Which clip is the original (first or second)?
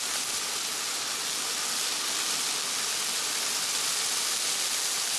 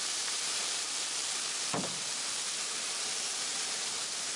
first